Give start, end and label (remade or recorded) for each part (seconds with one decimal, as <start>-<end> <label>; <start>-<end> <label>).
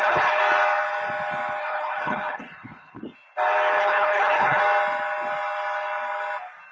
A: 0.0-0.4 remade; 0.4-1.6 recorded; 1.6-3.0 remade; 3.0-3.8 recorded; 3.8-4.6 remade; 4.6-6.7 recorded